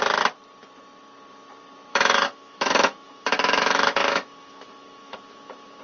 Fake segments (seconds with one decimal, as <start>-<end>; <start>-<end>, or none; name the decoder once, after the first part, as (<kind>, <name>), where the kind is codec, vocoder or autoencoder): 1.9-5.8 (autoencoder, DAC-VAE)